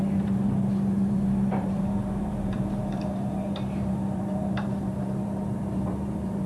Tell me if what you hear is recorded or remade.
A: remade